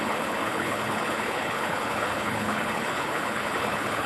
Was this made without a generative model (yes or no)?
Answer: no